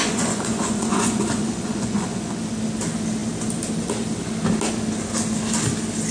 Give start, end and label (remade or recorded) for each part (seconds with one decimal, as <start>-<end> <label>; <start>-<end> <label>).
0.0-2.4 remade; 2.4-6.1 recorded